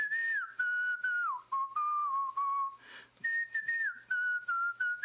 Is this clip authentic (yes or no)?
yes